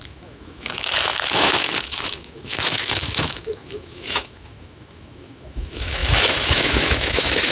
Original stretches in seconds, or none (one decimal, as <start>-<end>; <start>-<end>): none